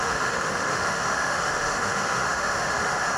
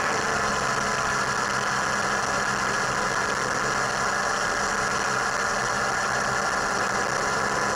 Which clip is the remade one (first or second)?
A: first